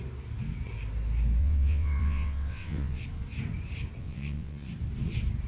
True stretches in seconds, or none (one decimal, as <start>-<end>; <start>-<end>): 0.0-1.4; 3.0-4.0; 4.7-5.5